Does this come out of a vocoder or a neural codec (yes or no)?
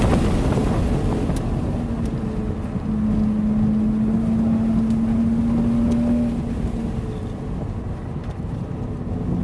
no